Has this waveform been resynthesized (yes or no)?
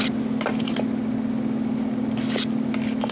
no